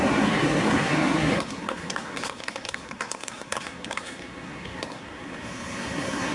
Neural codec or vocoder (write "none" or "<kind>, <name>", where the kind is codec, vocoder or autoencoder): codec, SNAC